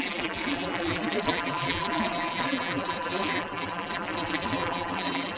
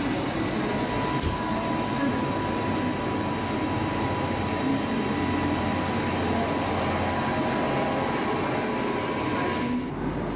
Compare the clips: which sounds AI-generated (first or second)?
first